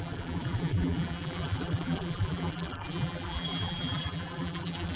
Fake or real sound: fake